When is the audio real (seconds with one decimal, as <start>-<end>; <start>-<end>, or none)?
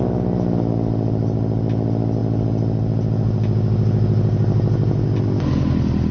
0.0-6.1